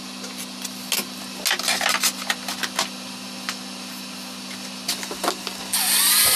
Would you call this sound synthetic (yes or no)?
no